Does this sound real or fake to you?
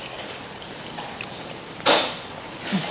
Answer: real